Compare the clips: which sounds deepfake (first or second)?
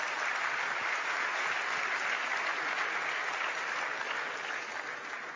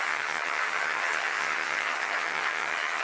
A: second